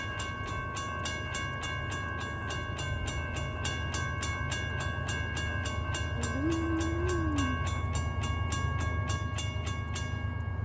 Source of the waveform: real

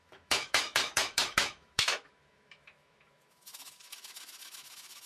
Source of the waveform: fake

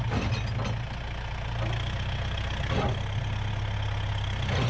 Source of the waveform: real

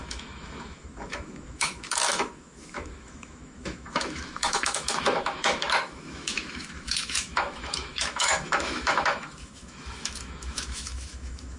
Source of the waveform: fake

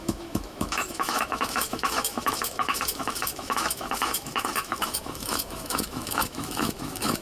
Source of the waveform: fake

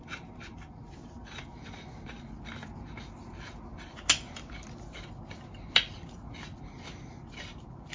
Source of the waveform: real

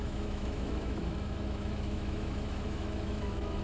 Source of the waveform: fake